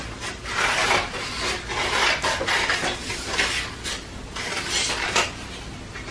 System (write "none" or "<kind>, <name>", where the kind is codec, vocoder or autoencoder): none